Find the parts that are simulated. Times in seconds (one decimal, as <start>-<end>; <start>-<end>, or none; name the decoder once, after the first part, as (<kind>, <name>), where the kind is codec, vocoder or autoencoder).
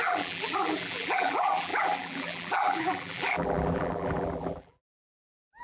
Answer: 0.0-5.6 (vocoder, BigVGAN v2)